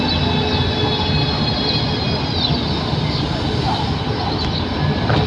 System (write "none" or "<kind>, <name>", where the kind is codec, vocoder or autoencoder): none